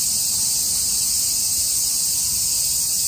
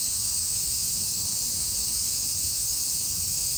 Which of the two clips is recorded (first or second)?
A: first